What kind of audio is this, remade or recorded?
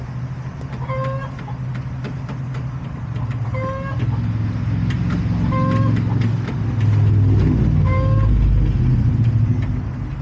recorded